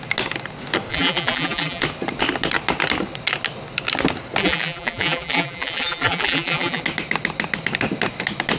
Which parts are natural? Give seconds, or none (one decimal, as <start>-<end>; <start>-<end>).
0.0-0.9; 1.8-4.4; 6.8-8.6